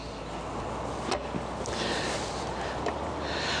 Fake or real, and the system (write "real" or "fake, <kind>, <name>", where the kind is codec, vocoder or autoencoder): real